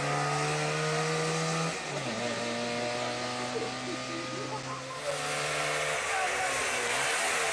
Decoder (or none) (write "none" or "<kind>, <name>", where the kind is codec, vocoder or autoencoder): none